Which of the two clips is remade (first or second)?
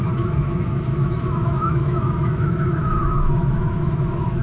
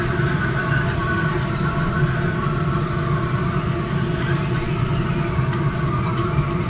first